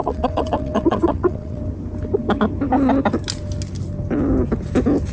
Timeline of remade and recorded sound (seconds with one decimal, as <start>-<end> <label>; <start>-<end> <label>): 0.0-1.6 remade; 1.6-5.1 recorded